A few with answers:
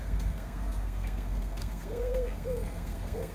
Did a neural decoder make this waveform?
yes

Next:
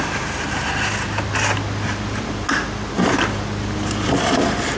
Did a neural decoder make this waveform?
no